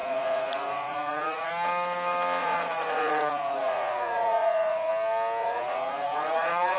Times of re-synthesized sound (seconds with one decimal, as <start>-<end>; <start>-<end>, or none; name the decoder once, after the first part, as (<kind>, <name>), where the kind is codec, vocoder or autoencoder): 0.0-1.5 (vocoder, Vocos); 2.4-4.9; 5.4-6.8